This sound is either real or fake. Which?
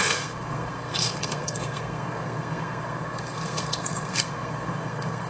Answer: fake